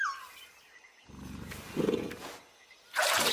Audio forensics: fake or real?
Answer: real